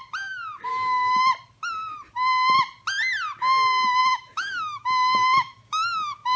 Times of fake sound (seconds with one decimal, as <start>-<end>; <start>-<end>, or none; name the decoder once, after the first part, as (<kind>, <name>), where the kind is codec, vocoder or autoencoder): 0.7-1.3 (autoencoder, DAC-VAE); 4.0-6.4